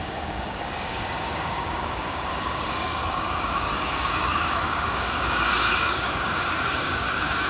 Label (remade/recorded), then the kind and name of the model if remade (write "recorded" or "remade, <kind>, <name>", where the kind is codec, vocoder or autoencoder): remade, codec, DAC